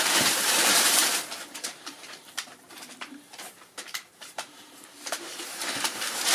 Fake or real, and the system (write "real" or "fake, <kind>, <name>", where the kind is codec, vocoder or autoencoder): fake, vocoder, BigVGAN v2